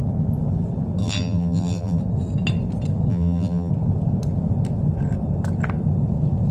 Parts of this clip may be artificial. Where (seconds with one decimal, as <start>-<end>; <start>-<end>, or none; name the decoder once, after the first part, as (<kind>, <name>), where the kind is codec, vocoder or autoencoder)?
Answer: 1.0-2.0 (vocoder, BigVGAN v2); 3.1-3.7

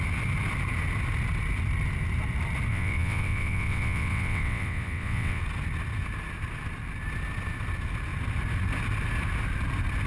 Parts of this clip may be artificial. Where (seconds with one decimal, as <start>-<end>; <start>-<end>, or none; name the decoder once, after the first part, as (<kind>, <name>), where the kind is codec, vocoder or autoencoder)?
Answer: 2.7-5.4 (vocoder, WaveNeXt)

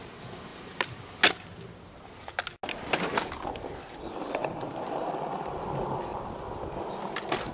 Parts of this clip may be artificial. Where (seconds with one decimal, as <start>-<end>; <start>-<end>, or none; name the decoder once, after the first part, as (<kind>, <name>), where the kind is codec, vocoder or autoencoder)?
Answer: 4.4-5.1 (vocoder, BigVGAN v2)

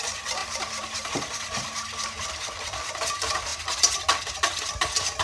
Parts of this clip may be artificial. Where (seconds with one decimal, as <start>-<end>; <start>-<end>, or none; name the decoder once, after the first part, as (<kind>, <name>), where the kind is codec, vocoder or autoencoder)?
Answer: 0.4-1.1 (vocoder, BigVGAN v2)

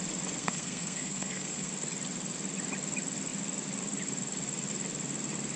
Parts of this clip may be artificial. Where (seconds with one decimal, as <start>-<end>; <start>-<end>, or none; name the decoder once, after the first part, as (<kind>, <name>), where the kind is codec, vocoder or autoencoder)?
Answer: 0.4-1.7 (codec, SNAC)

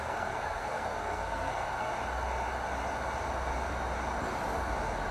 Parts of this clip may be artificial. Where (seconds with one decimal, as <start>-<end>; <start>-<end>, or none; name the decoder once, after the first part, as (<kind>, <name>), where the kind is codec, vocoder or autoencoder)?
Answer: 0.0-1.9 (codec, SNAC)

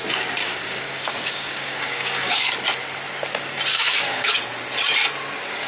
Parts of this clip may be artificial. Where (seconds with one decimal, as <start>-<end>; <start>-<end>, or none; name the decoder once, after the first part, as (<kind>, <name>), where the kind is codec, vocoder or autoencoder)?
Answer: 0.4-2.4 (codec, DAC); 3.7-4.3

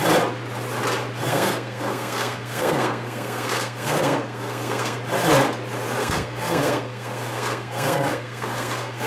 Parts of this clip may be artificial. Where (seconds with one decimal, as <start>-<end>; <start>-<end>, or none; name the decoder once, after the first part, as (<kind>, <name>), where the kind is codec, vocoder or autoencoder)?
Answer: 1.3-5.0 (codec, SNAC); 6.0-9.1